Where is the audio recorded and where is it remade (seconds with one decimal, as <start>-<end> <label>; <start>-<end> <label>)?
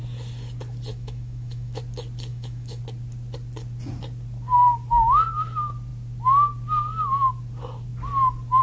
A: 0.0-0.9 recorded; 0.9-1.8 remade; 1.8-2.3 recorded; 2.3-2.8 remade; 2.8-8.6 recorded